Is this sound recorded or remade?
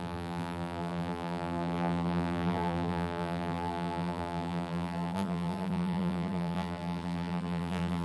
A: remade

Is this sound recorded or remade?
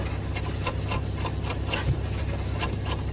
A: recorded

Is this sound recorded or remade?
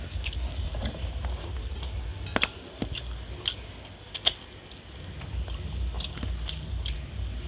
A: recorded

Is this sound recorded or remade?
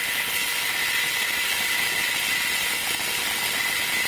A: recorded